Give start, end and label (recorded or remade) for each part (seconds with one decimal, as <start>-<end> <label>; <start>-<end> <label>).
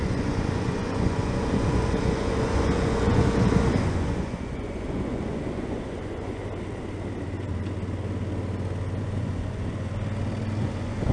0.0-6.4 remade; 6.4-9.0 recorded; 9.0-9.9 remade; 9.9-10.6 recorded; 10.6-11.1 remade